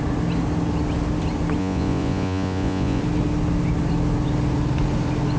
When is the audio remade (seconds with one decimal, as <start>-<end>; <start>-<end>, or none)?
1.6-3.0